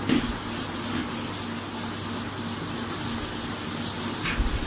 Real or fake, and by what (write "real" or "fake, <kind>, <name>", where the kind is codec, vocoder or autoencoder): real